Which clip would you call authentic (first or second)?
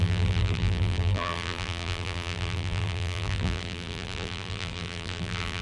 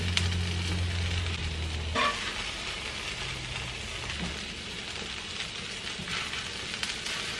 second